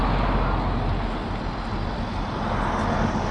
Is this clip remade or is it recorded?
recorded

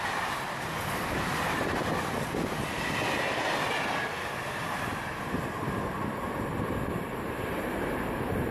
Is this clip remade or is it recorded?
recorded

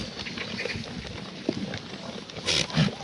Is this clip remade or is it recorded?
recorded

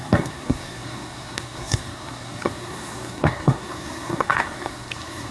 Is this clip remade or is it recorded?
remade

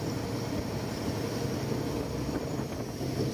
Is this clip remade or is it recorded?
recorded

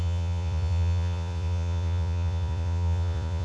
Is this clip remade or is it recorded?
remade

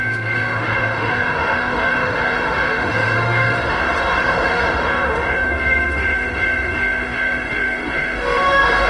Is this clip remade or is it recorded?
remade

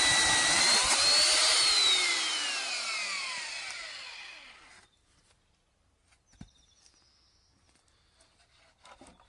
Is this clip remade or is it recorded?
recorded